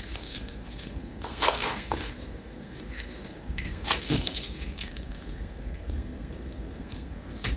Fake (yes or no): yes